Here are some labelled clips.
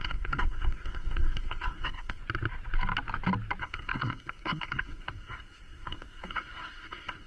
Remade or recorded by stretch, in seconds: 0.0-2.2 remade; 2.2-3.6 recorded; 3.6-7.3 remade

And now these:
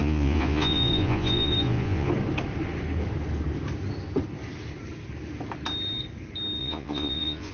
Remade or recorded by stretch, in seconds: 0.0-2.1 remade; 2.1-6.6 recorded; 6.6-7.5 remade

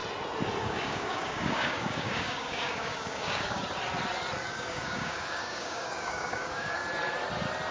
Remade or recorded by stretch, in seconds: 0.0-0.6 recorded; 0.6-3.6 remade; 3.6-4.5 recorded; 4.5-6.8 remade; 6.8-7.7 recorded

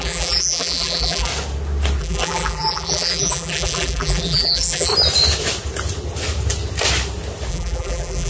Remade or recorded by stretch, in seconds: 0.0-1.3 remade; 1.3-2.0 recorded; 2.0-4.9 remade; 4.9-7.5 recorded; 7.5-8.3 remade